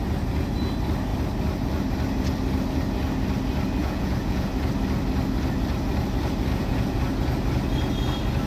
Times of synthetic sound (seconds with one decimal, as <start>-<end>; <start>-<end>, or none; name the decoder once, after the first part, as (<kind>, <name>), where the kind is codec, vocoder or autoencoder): 3.8-4.5 (vocoder, Vocos); 6.5-7.0